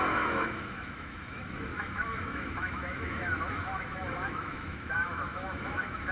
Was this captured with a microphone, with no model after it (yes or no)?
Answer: no